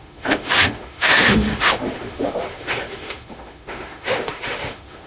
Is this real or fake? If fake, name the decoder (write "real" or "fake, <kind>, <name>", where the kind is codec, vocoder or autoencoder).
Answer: fake, autoencoder, DAC-VAE